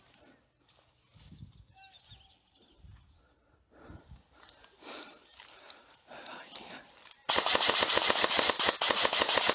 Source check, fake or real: real